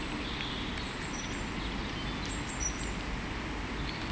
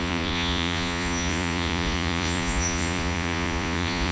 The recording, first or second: first